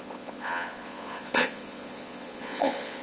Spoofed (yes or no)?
yes